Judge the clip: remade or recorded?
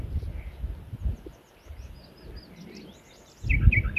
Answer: recorded